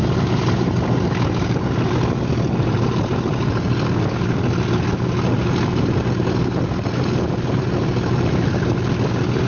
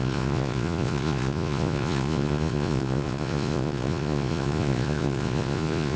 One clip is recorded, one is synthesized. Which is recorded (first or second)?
first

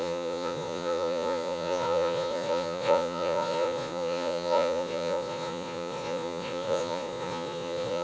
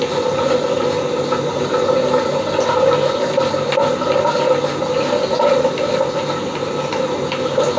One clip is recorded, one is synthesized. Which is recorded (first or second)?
second